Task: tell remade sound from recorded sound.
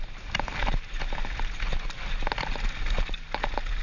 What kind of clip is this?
recorded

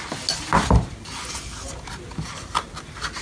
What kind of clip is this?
recorded